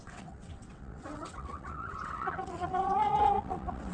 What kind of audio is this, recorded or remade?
remade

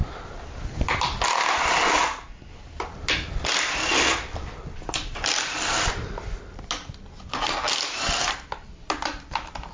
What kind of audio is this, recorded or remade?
recorded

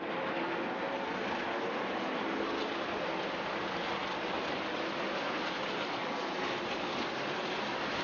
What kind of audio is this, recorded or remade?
recorded